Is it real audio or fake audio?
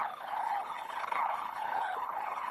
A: fake